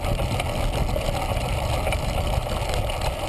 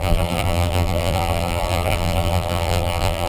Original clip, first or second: first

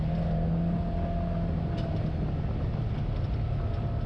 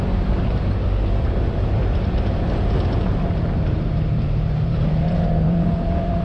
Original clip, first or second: first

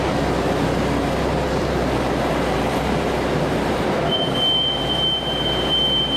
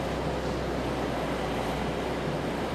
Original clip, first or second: second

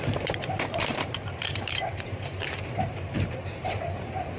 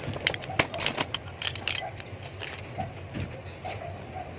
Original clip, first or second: second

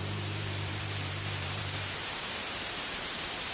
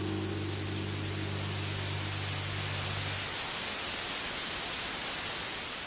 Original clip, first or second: second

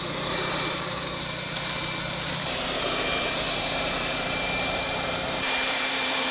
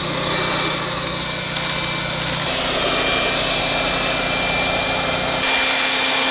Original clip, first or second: second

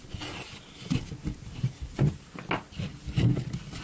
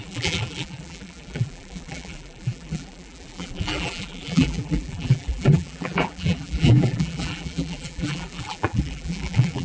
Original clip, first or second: first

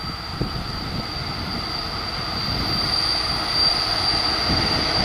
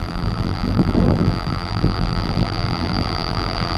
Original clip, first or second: first